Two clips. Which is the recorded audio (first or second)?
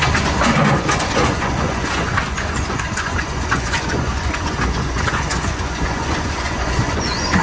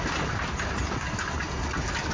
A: second